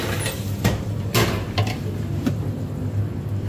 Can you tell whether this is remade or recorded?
recorded